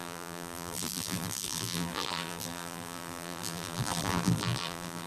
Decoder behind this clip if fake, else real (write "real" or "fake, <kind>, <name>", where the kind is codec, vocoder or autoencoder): fake, vocoder, BigVGAN v2